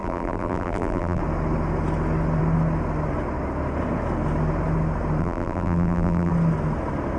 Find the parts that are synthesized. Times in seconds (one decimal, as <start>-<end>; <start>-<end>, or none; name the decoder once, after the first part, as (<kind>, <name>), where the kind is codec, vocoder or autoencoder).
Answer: 0.0-1.2 (vocoder, BigVGAN v2); 5.2-6.3